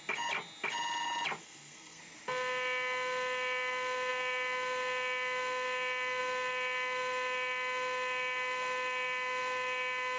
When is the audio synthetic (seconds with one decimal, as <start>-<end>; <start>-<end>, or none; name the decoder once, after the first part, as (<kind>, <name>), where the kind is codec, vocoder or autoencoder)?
1.4-2.0 (codec, SNAC)